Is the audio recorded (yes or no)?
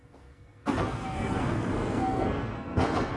no